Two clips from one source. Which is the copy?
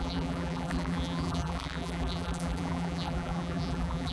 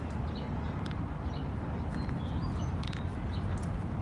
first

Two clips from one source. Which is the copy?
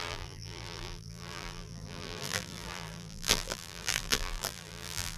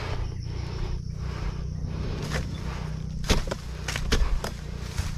first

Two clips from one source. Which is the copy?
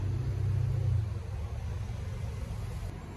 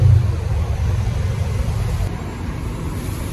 second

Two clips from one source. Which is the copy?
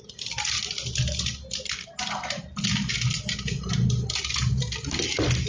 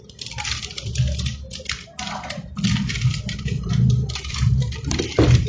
second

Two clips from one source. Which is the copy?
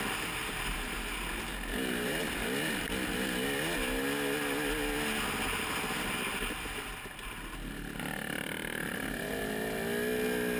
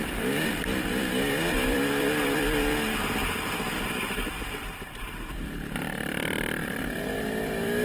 second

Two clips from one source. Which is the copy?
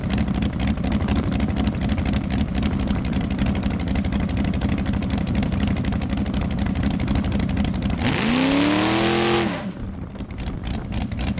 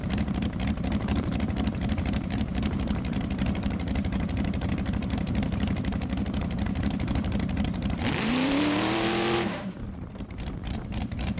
second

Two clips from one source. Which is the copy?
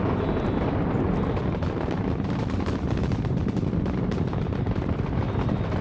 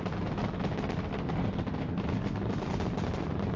first